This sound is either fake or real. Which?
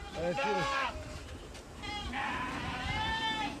fake